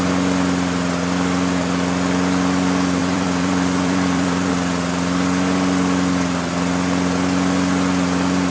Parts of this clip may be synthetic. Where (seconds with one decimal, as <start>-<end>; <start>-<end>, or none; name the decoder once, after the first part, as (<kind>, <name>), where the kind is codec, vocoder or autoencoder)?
3.0-4.5 (vocoder, BigVGAN v2)